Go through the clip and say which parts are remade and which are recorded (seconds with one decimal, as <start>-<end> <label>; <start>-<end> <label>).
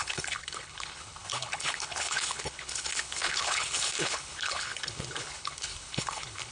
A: 0.0-6.5 remade